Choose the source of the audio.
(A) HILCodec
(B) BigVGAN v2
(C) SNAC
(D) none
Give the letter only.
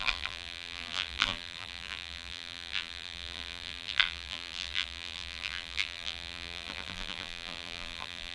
B